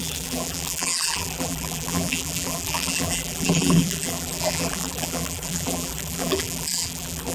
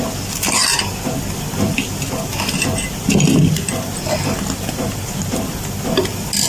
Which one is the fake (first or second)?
first